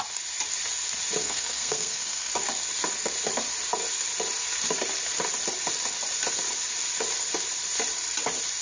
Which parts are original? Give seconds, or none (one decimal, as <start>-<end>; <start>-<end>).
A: 0.0-1.2; 2.3-8.6